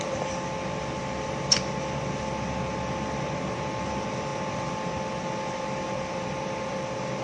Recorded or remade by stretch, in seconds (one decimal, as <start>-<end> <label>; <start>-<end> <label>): 0.0-7.2 recorded